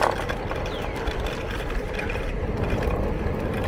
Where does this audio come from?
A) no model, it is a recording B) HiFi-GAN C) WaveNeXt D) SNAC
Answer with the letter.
A